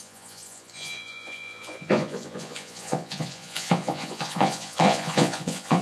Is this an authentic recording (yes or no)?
no